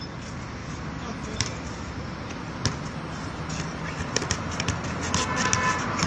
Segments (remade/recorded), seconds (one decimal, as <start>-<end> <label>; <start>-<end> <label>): 0.0-6.1 recorded